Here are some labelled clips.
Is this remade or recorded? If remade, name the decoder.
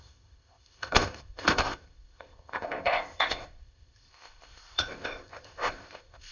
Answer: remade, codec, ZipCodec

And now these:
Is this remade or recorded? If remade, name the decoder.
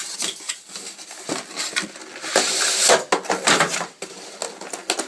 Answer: recorded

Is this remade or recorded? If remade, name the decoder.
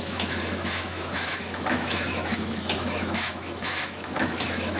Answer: remade, autoencoder, DAC-VAE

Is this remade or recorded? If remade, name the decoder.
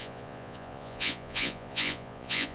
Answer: remade, vocoder, Vocos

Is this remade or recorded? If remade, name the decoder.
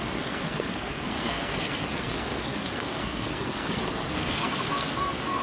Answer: remade, codec, SNAC